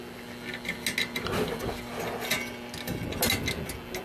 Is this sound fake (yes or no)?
no